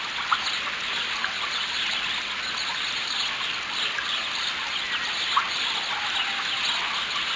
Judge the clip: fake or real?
real